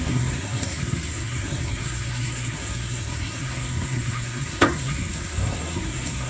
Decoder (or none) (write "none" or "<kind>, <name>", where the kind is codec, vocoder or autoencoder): codec, SNAC